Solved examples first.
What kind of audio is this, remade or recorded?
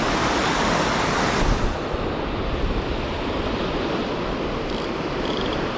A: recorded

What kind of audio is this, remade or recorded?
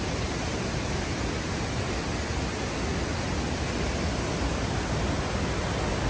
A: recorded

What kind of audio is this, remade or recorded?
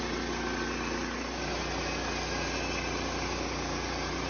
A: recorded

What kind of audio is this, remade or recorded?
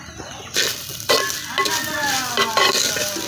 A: recorded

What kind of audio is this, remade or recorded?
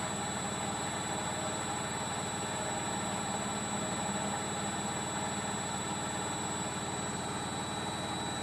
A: recorded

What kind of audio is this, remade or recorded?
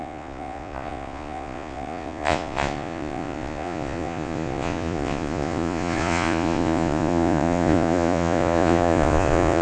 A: remade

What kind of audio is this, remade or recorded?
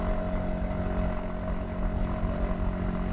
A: recorded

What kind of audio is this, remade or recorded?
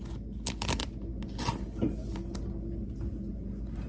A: recorded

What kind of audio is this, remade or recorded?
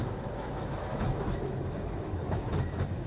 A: remade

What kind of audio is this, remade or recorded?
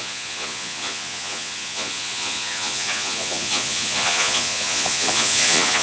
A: remade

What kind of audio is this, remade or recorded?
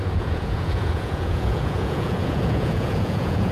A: remade